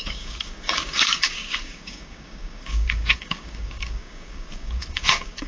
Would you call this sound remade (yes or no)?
yes